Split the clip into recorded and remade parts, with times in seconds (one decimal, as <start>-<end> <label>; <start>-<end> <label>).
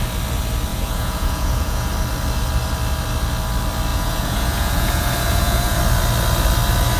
0.0-0.7 recorded; 0.7-1.9 remade; 1.9-3.9 recorded; 3.9-5.8 remade; 5.8-7.0 recorded